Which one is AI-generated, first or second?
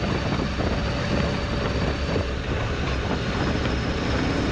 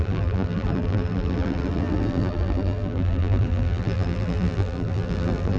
second